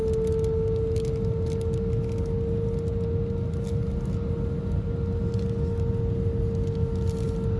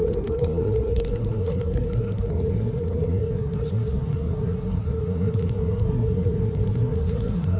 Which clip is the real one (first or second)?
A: first